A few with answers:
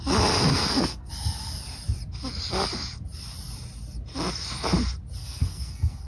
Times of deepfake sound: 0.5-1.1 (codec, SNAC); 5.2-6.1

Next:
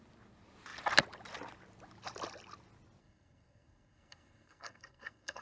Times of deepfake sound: 3.0-5.4 (codec, SNAC)

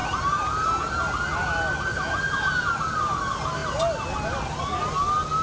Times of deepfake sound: none